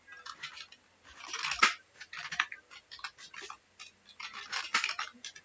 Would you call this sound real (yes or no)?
yes